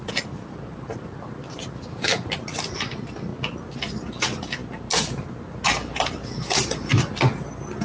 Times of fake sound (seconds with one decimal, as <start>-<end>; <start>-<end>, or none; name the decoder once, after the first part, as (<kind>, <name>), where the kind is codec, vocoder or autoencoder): none